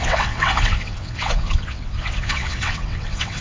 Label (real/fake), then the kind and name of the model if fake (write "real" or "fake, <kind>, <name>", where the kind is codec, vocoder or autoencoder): fake, vocoder, WaveNeXt